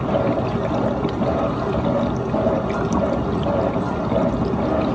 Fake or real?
real